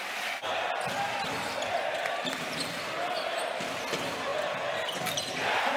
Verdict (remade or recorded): recorded